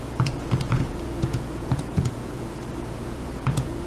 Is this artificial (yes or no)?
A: yes